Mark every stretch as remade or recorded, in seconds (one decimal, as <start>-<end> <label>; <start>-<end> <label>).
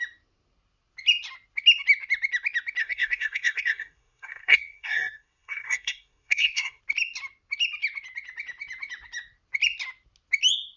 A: 0.0-2.8 recorded; 2.8-6.8 remade; 6.8-10.8 recorded